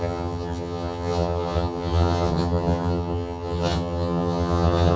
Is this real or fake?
fake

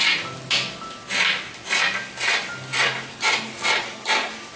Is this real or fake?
real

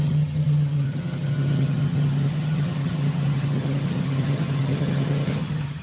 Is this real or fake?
fake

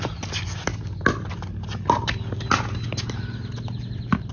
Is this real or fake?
real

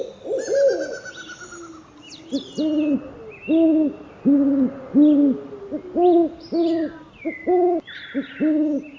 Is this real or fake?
real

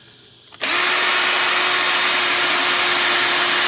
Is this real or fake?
real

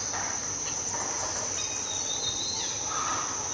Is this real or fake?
real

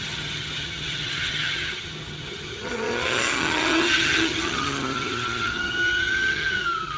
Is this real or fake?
fake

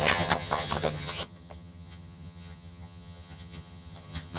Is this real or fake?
fake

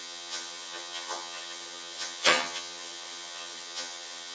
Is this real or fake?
fake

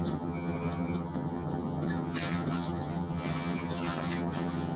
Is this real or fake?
fake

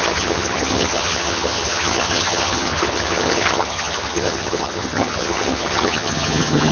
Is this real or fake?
fake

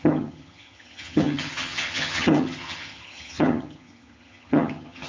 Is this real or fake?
fake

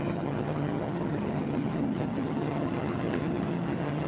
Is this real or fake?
fake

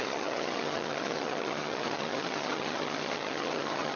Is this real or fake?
fake